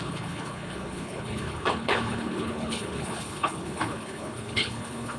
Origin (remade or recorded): remade